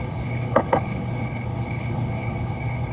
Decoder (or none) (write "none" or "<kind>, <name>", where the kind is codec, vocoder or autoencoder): codec, HILCodec